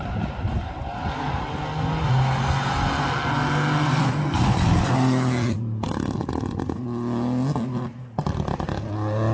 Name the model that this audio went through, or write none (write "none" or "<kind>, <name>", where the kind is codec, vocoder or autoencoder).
none